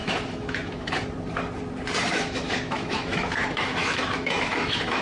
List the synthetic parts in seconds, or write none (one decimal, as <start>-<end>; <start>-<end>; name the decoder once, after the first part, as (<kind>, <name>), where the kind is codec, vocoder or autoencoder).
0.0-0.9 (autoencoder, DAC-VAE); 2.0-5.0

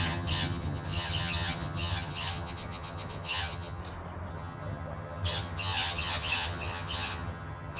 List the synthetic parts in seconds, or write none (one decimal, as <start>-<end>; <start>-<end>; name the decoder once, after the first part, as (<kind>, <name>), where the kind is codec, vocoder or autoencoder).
0.0-3.8 (vocoder, HiFi-GAN); 4.3-7.8

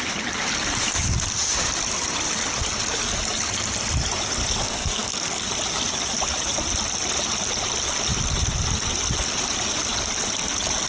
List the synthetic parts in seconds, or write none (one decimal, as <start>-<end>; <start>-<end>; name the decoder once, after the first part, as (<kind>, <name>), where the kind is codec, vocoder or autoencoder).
4.6-5.5 (codec, SNAC)